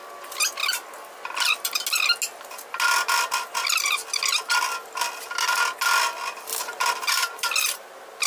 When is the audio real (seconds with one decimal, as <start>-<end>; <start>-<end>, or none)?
0.0-8.3